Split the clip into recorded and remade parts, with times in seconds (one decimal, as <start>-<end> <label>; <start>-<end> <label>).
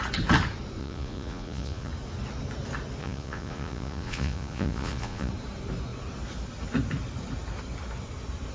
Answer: 0.0-0.8 recorded; 0.8-1.9 remade; 1.9-3.0 recorded; 3.0-5.3 remade; 5.3-8.5 recorded